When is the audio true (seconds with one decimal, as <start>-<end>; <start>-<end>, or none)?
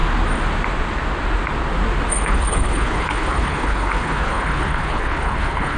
0.0-2.1